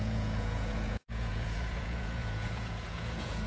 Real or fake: fake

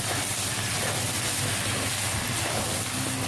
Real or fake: real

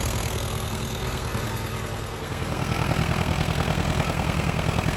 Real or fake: fake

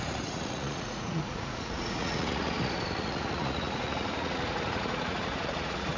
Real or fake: fake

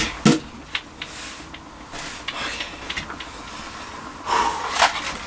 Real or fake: real